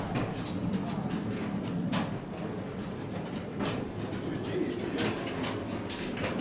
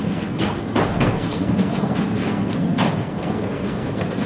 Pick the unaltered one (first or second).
first